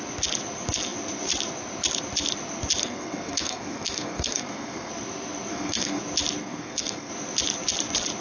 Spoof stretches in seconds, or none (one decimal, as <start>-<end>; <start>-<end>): 2.8-4.9; 5.5-6.0; 6.4-7.1